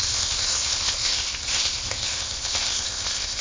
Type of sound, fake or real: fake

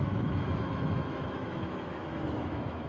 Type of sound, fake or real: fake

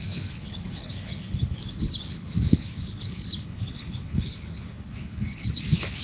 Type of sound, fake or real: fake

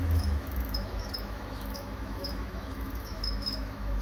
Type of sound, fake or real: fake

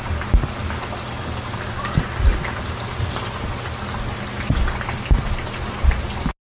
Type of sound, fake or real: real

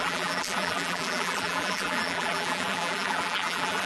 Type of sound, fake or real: fake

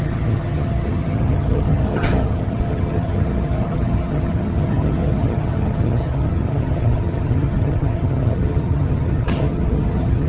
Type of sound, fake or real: fake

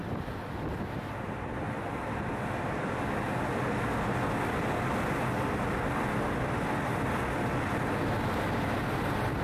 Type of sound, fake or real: real